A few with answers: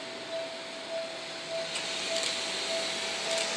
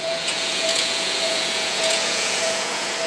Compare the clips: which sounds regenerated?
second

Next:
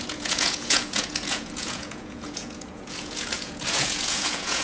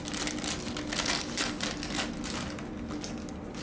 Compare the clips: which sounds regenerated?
first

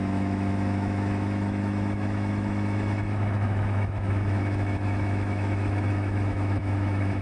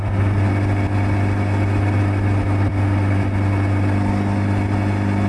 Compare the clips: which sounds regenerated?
first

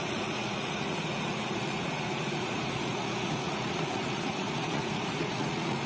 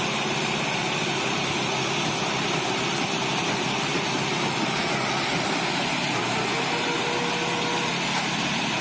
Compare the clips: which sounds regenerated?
first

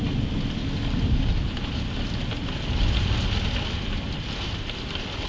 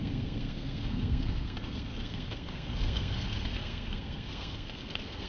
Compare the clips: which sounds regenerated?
second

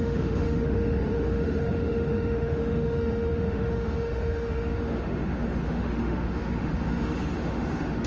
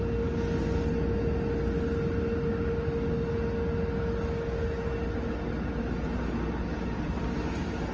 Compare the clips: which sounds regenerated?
first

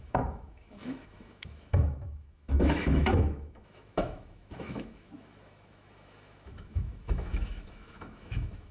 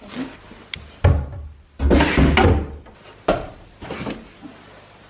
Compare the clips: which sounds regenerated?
first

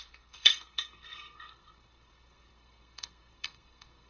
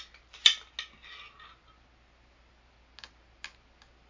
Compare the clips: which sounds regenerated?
first